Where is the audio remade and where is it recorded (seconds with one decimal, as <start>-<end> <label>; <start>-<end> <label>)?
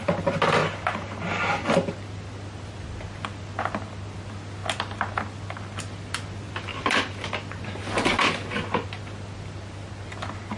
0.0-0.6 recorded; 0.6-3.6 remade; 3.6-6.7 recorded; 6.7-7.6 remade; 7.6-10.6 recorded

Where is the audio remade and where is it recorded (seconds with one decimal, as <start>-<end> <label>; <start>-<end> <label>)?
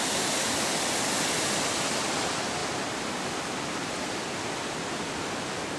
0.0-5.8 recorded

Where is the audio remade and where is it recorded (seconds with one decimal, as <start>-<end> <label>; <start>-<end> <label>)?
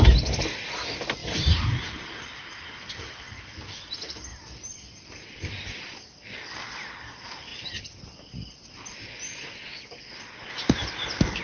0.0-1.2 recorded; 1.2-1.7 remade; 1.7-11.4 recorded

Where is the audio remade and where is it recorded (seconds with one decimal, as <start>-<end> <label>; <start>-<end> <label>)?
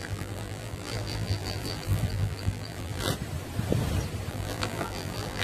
0.0-3.1 remade; 3.1-4.3 recorded; 4.3-5.4 remade